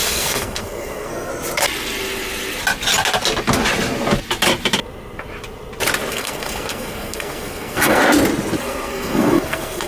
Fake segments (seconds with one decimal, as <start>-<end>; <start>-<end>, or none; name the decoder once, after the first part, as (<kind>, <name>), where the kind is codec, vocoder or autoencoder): 0.0-1.3 (codec, SNAC); 6.1-8.0; 8.6-9.9